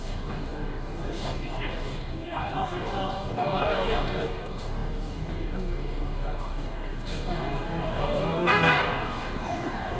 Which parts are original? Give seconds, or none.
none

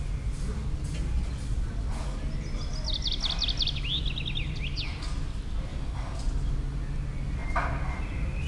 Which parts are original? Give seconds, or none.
0.0-5.7; 6.2-8.5

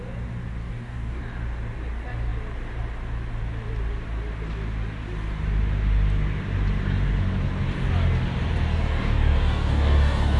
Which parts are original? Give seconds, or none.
0.0-0.6; 1.2-8.7

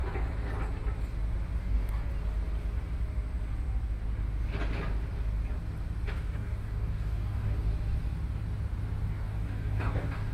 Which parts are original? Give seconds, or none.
0.0-1.6; 2.1-6.1; 7.7-9.1

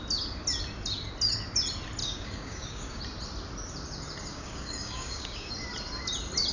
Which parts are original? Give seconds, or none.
0.0-2.0; 3.0-4.3; 5.5-6.5

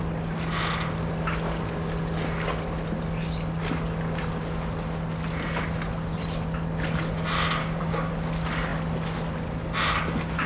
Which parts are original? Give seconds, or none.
0.0-7.6; 8.1-10.5

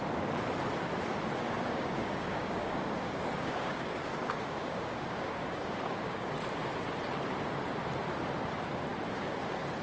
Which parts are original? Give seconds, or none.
0.0-1.1; 6.3-9.8

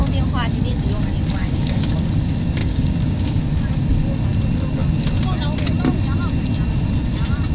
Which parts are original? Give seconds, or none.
0.0-1.4; 1.9-2.6; 3.4-7.5